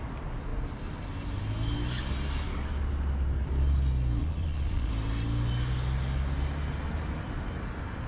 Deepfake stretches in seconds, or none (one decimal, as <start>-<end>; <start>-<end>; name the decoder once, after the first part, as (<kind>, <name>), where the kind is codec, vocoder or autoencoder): 4.2-4.9 (vocoder, Vocos)